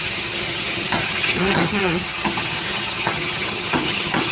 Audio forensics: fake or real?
fake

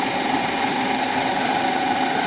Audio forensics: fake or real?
real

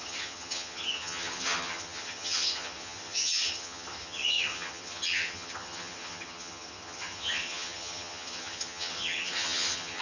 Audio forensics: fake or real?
fake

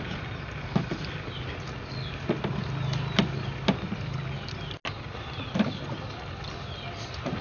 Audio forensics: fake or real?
real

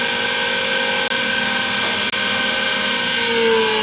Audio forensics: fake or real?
real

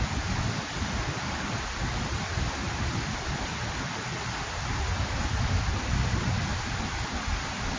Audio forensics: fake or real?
real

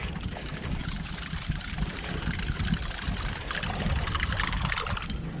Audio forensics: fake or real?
real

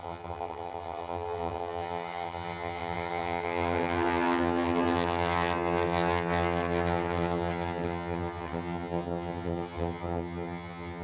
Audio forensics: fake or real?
fake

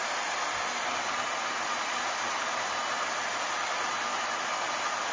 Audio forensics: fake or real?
real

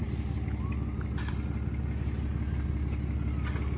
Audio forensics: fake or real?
real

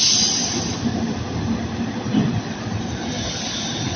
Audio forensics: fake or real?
real